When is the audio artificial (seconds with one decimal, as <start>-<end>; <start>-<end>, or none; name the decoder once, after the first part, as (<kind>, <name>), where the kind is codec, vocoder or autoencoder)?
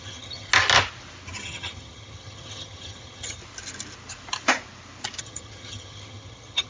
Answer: 0.0-0.5 (vocoder, HiFi-GAN); 1.4-3.4; 5.2-6.7